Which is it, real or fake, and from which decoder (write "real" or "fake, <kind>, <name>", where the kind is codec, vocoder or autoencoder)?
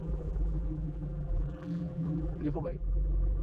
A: fake, vocoder, BigVGAN v2